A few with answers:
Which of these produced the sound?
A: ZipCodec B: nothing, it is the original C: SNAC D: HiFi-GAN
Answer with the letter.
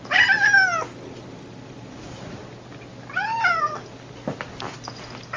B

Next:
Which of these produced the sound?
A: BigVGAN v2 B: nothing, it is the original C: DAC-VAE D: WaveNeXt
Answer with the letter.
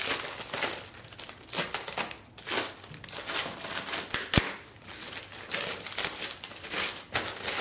B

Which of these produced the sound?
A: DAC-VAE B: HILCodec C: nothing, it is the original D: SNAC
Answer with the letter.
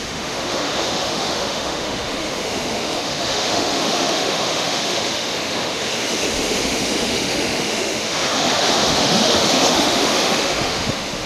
A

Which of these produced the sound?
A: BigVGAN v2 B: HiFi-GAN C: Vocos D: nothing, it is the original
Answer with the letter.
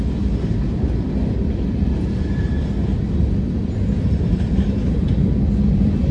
D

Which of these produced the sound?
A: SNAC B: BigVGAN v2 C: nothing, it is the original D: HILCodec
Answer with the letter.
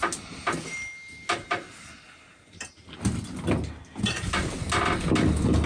C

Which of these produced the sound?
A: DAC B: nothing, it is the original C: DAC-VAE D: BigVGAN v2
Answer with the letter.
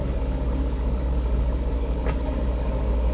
A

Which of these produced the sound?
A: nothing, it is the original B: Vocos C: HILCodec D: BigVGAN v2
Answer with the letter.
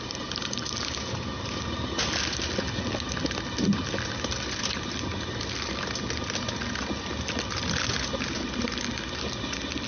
A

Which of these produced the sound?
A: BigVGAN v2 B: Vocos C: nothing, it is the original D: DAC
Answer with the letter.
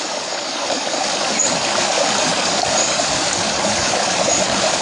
D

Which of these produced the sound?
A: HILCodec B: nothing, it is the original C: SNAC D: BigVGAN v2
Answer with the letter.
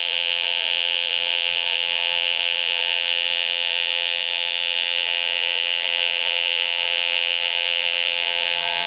D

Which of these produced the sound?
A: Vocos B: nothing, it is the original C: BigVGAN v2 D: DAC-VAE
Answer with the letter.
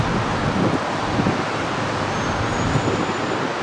B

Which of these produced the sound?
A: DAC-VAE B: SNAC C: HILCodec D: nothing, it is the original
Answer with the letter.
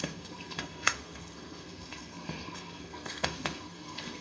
B